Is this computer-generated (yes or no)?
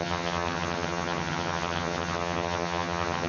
yes